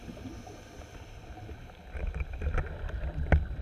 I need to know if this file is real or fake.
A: real